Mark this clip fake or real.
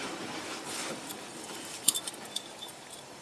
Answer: fake